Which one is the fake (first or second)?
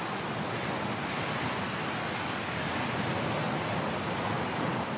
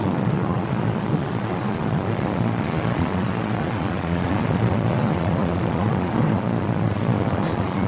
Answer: second